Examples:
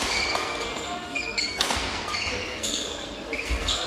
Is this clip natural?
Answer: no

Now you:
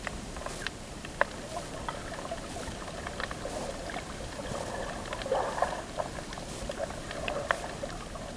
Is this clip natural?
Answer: yes